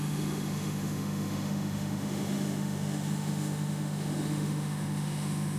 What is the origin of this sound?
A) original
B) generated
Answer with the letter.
B